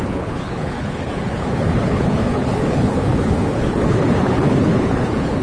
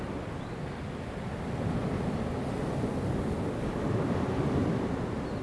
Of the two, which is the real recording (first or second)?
second